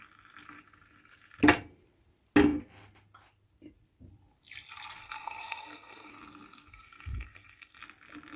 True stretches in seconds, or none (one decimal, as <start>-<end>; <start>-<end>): 0.0-5.0; 6.1-6.7; 7.8-8.4